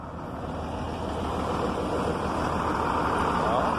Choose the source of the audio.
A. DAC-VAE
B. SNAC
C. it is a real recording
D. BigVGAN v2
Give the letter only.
C